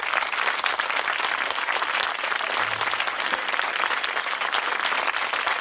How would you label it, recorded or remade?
recorded